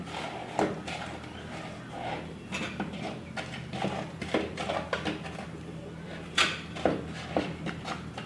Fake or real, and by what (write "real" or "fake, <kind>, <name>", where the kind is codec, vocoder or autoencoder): real